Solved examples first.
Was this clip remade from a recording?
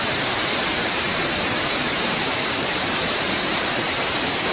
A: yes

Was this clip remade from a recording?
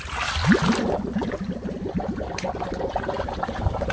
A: no